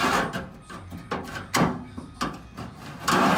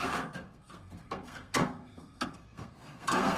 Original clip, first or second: first